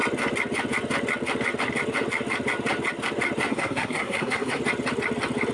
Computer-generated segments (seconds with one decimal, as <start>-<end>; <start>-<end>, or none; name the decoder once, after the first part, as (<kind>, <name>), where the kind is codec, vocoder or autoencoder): 3.5-4.6 (codec, SNAC)